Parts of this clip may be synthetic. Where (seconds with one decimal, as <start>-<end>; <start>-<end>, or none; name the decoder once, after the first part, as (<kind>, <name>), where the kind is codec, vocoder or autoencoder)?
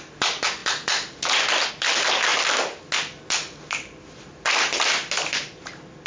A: none